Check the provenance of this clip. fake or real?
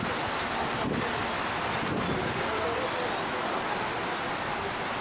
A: real